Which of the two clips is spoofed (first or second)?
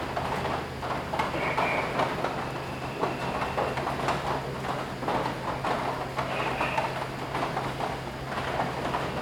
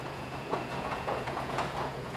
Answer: second